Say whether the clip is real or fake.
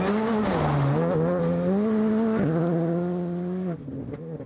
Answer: real